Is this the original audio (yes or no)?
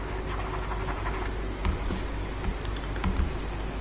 yes